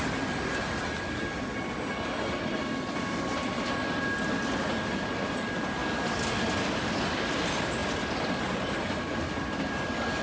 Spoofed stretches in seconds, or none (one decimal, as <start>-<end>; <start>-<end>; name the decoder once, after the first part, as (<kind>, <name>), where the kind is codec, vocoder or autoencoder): none